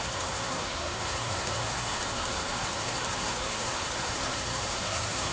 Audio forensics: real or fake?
fake